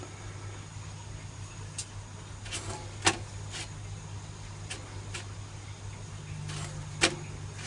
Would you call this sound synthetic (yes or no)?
no